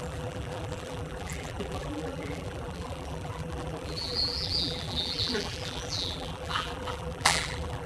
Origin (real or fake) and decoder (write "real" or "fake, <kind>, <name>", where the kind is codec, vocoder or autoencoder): fake, vocoder, BigVGAN v2